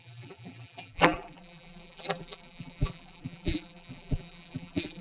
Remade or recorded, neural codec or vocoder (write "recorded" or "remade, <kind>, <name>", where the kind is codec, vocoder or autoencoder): remade, vocoder, BigVGAN v2